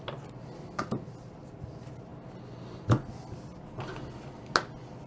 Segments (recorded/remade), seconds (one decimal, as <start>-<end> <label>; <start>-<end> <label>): 0.0-5.1 recorded